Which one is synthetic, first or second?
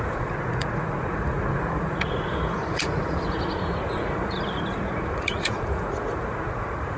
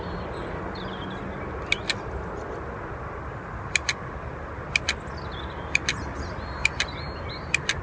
first